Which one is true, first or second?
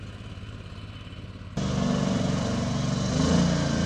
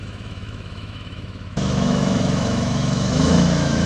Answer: first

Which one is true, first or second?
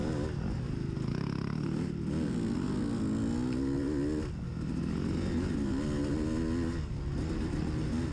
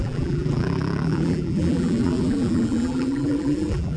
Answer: first